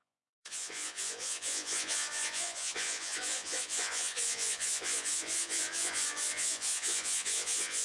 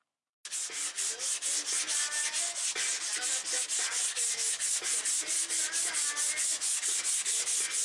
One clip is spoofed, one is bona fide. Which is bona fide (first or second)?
second